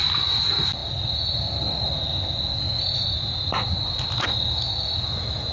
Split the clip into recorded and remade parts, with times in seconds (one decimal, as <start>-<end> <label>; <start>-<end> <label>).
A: 0.0-5.5 recorded